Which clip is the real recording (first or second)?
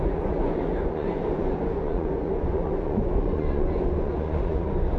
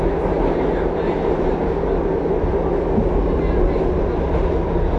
second